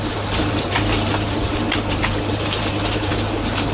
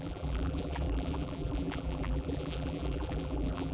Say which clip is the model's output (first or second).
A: second